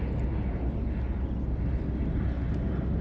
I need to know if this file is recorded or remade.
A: recorded